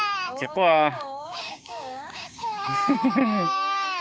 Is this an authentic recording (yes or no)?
no